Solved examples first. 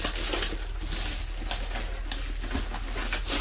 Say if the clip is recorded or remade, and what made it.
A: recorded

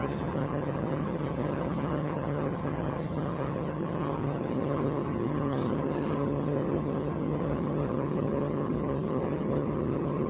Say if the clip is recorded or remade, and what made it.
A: remade, vocoder, HiFi-GAN